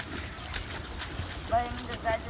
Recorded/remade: recorded